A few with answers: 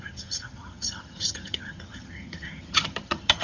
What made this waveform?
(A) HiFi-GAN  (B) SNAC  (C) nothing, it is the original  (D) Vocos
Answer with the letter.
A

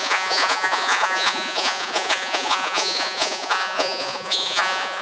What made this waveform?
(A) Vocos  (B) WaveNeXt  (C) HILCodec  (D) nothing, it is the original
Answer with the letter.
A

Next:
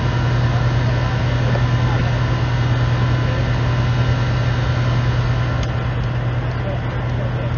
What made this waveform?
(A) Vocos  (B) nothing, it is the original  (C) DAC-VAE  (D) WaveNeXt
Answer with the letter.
B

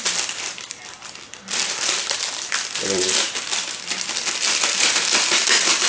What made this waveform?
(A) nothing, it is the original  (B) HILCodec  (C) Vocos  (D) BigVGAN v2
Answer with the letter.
D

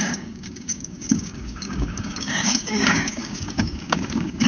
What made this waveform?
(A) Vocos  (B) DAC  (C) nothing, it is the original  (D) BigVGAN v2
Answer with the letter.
B